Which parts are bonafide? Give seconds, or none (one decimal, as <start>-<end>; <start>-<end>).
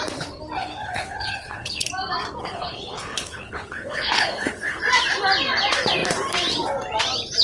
0.0-0.6; 1.9-2.4; 4.8-7.4